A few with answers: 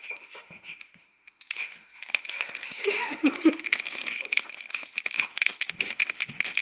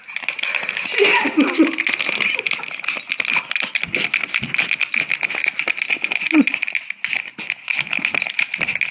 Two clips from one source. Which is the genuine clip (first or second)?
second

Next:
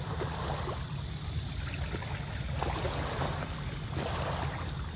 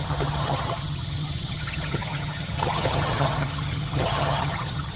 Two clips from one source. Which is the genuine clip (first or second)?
first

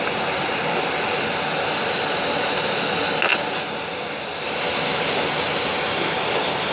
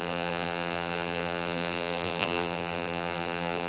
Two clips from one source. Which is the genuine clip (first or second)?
first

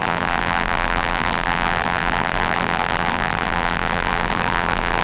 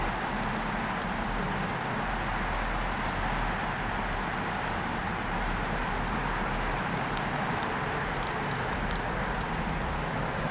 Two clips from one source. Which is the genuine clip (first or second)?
second